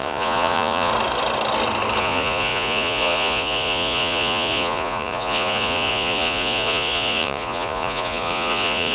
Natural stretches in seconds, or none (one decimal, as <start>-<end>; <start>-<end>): 0.9-2.0